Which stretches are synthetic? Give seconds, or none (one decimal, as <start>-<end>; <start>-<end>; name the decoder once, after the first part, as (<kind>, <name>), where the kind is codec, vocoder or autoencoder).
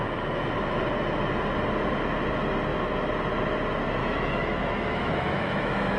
4.0-6.0 (autoencoder, DAC-VAE)